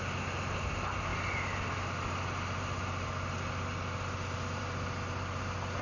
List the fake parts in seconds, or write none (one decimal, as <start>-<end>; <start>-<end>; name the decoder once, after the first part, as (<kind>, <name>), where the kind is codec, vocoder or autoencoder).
none